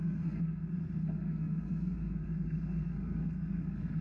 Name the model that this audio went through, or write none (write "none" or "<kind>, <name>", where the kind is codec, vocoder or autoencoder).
codec, SNAC